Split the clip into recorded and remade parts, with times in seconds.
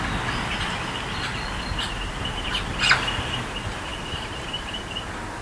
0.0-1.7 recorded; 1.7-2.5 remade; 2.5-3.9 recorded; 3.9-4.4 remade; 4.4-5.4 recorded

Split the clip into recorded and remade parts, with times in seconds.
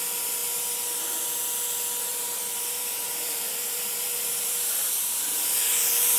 0.0-2.1 recorded; 2.1-5.2 remade; 5.2-6.2 recorded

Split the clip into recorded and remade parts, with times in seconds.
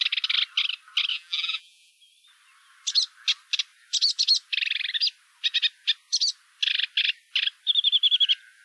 0.0-1.1 recorded; 1.1-1.9 remade; 1.9-8.6 recorded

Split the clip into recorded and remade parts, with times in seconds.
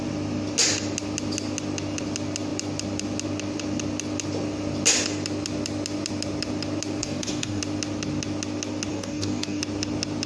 0.0-7.0 recorded; 7.0-7.6 remade; 7.6-8.9 recorded; 8.9-9.6 remade; 9.6-10.3 recorded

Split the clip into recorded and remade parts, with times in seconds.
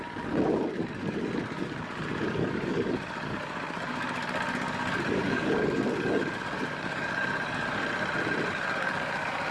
0.0-7.8 remade; 7.8-8.5 recorded; 8.5-9.5 remade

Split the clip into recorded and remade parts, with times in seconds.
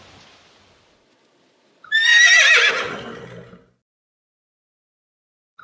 0.0-2.1 recorded; 2.1-2.7 remade; 2.7-5.6 recorded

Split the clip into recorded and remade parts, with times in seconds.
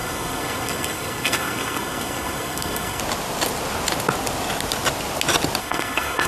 0.0-3.0 remade; 3.0-5.6 recorded; 5.6-6.3 remade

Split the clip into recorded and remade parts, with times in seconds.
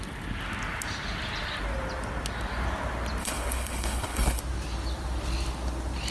0.0-3.2 recorded; 3.2-4.4 remade; 4.4-6.1 recorded